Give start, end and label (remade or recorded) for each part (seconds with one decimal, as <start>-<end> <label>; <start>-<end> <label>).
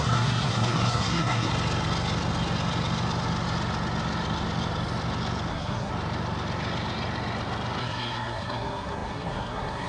0.0-1.5 remade; 1.5-5.5 recorded; 5.5-5.9 remade; 5.9-7.8 recorded; 7.8-9.9 remade